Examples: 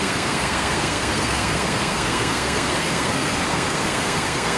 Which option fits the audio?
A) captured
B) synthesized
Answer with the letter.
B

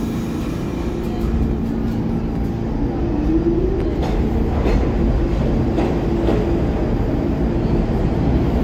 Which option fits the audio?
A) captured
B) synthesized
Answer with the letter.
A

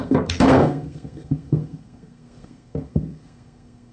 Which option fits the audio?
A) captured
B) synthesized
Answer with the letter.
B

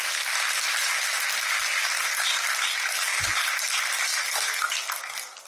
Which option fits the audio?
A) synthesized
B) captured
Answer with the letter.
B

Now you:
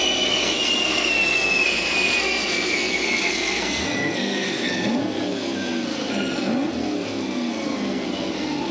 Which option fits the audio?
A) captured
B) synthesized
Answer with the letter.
B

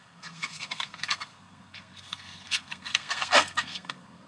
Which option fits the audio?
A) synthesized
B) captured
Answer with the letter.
A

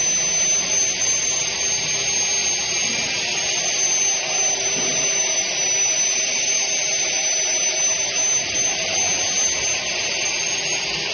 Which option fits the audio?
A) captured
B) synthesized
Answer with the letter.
A